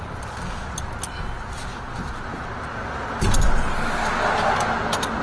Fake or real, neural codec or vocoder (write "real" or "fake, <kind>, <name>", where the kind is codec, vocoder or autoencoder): real